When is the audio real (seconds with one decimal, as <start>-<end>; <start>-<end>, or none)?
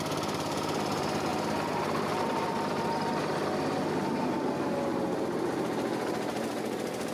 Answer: 0.0-7.1